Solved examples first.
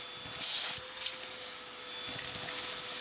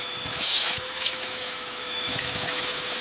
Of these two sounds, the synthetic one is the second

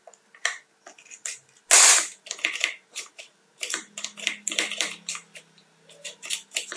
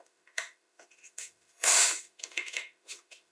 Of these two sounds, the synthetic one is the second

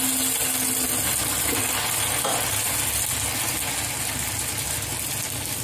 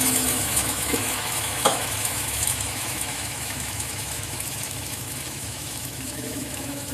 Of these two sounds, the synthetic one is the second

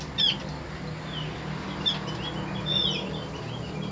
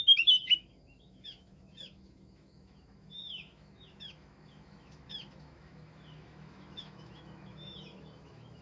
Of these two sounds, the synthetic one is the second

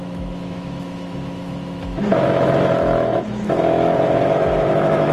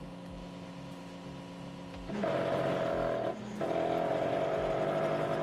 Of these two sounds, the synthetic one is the first